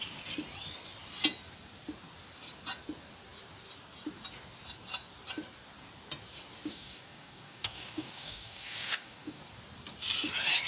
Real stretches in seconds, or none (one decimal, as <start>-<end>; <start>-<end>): 0.0-6.7; 9.4-10.7